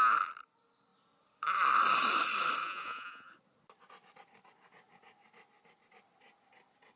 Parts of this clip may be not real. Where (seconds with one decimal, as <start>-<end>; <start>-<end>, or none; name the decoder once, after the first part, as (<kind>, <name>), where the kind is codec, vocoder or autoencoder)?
2.6-3.3 (vocoder, Vocos)